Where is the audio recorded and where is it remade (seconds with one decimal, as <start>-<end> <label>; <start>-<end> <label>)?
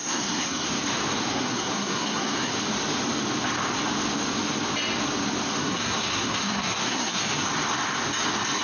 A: 0.0-0.7 remade; 0.7-1.3 recorded; 1.3-2.5 remade; 2.5-5.5 recorded; 5.5-7.2 remade; 7.2-8.6 recorded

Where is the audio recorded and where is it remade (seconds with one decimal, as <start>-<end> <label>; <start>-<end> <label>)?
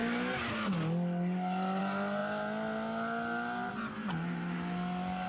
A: 0.0-5.3 recorded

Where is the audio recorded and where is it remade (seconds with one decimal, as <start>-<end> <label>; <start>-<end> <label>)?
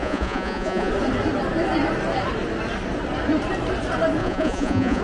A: 0.0-0.9 remade; 0.9-4.2 recorded; 4.2-5.0 remade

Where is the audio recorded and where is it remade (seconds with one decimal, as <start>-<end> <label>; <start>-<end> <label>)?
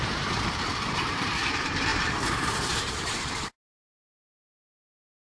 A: 0.0-5.4 remade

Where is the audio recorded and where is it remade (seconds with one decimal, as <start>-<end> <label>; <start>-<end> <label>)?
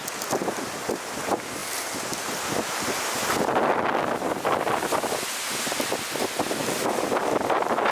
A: 0.0-7.9 recorded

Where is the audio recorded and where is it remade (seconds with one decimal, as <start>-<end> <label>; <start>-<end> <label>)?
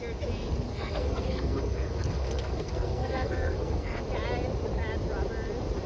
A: 0.0-0.7 recorded; 0.7-4.0 remade; 4.0-5.9 recorded